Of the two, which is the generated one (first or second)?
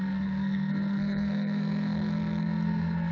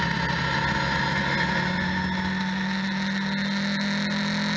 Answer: first